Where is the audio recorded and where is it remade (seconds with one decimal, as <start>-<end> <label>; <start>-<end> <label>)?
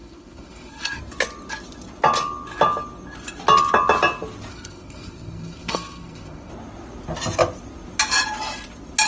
0.0-1.0 remade; 1.0-4.5 recorded; 4.5-6.5 remade; 6.5-9.1 recorded